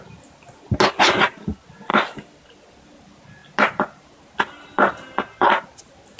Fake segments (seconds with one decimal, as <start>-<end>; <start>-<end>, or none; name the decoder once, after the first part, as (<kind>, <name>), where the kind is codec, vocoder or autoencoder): none